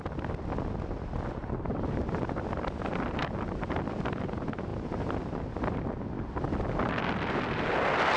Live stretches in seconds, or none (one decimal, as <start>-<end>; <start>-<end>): 0.0-1.4; 3.2-8.2